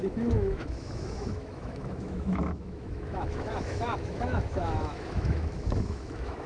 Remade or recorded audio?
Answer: remade